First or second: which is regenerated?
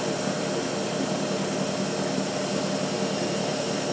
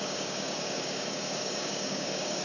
second